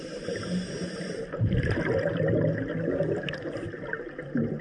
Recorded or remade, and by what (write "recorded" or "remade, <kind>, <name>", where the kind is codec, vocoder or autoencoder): recorded